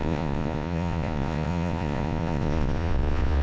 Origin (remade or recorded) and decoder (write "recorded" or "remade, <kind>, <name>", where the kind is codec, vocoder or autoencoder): remade, vocoder, Vocos